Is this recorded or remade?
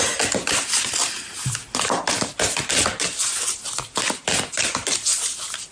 recorded